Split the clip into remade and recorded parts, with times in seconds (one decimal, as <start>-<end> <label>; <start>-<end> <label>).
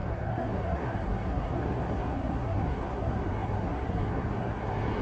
0.0-5.0 remade